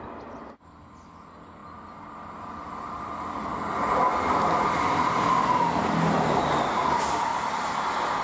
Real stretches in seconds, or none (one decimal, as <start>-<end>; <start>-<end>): 0.0-8.2